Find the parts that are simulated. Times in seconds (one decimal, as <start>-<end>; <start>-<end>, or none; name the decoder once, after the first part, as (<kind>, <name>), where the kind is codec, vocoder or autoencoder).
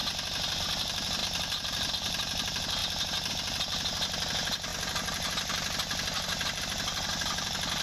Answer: 0.6-2.8 (vocoder, BigVGAN v2); 3.3-7.8